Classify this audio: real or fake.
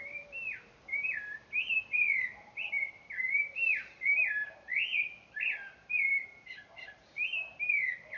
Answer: fake